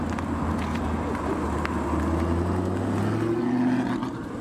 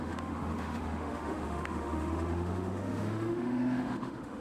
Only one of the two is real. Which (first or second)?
first